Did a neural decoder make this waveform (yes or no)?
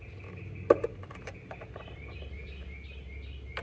no